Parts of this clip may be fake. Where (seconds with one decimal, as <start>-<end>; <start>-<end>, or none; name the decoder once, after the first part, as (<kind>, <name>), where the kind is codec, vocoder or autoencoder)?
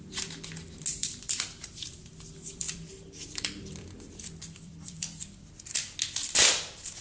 1.0-5.2 (vocoder, BigVGAN v2)